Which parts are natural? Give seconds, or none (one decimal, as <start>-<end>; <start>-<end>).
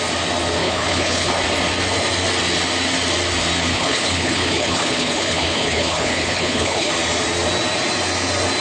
0.0-0.6; 1.3-3.7; 6.9-8.6